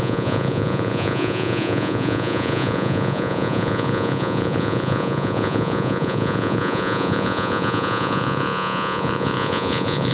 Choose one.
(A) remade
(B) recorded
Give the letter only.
A